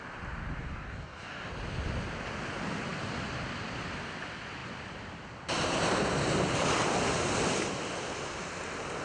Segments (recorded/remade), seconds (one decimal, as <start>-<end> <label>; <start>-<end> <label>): 0.0-0.6 recorded; 0.6-1.5 remade; 1.5-9.0 recorded